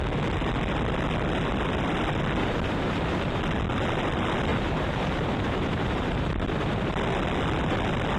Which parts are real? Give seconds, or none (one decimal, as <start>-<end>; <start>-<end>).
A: 0.0-2.4; 3.4-4.5; 6.9-8.2

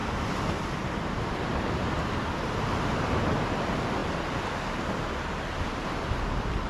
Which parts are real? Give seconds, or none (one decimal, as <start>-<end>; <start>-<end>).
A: 2.6-6.7

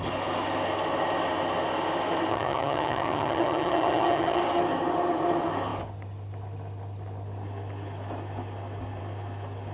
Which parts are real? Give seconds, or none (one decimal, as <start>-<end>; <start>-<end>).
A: 0.0-2.3; 4.4-9.7

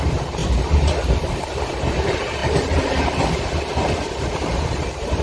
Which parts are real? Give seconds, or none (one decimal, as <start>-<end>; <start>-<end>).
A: 0.4-1.8

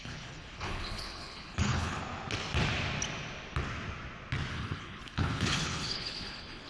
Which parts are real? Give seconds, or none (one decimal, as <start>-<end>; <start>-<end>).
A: 2.0-4.5

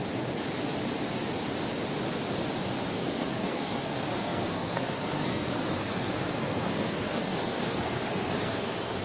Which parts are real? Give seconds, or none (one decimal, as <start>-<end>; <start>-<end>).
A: 0.0-2.9